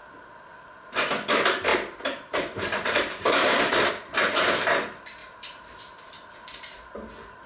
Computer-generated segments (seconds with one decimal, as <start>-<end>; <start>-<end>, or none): 1.7-3.9; 5.2-5.8